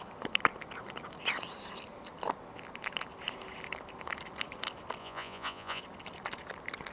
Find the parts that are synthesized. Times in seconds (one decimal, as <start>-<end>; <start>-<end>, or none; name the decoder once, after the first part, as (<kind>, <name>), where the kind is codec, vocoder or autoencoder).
5.0-5.8 (vocoder, Vocos)